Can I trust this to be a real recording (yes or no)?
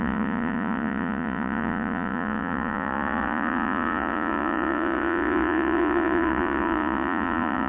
no